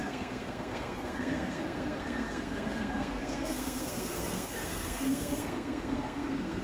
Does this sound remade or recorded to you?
remade